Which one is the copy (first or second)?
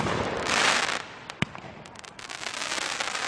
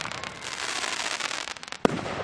second